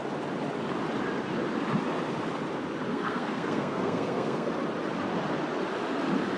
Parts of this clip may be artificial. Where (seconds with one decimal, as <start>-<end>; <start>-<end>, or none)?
2.9-4.5